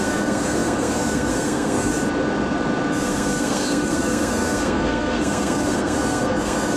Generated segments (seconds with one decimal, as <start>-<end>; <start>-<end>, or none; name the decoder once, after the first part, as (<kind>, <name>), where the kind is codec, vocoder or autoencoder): 0.0-1.9 (codec, SNAC); 2.9-6.8